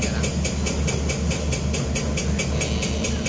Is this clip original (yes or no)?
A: yes